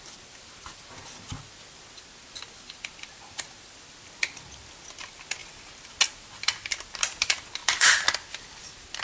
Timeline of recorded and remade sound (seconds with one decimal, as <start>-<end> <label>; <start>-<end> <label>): 0.0-7.6 recorded; 7.6-8.6 remade; 8.6-9.0 recorded